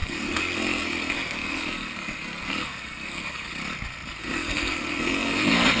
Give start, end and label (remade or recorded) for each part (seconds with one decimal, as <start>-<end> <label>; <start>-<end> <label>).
0.0-3.5 remade; 3.5-4.2 recorded; 4.2-5.8 remade